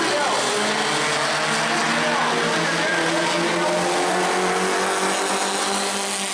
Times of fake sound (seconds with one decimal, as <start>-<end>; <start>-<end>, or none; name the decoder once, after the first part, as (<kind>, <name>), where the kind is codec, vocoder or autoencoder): none